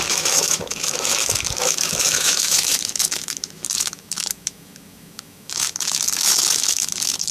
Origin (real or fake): fake